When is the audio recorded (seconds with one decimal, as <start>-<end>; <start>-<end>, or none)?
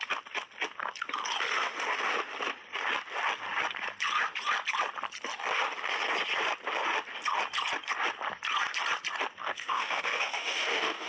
0.0-9.4